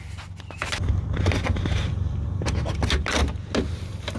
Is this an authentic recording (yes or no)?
yes